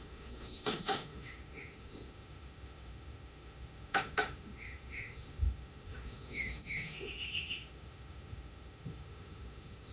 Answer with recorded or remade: remade